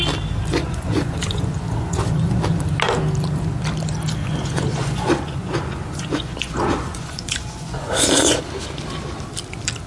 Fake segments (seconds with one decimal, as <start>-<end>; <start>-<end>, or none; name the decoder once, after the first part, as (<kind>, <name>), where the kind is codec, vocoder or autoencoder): 0.5-2.4 (vocoder, Vocos); 4.2-8.4